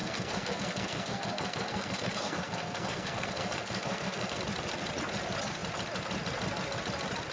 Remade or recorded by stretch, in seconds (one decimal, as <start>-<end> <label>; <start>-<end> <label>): 0.0-4.4 remade; 4.4-7.3 recorded